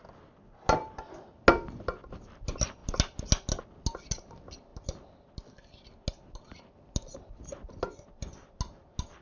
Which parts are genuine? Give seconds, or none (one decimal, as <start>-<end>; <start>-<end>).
0.0-9.2